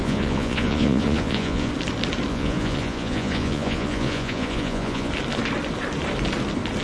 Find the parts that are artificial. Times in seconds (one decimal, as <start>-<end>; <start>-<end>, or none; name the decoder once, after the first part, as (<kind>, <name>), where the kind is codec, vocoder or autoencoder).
0.0-1.7 (vocoder, Vocos); 2.3-5.1